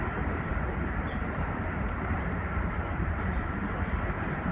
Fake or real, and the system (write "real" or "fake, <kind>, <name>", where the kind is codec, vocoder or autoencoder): fake, vocoder, BigVGAN v2